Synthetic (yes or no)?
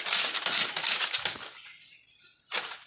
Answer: no